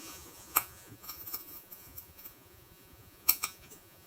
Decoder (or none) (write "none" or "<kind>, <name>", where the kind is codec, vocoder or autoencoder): vocoder, Vocos